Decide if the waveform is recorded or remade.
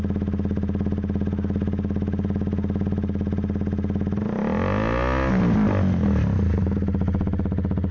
recorded